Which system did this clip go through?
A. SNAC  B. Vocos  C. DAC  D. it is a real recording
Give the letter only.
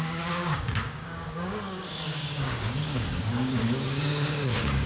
C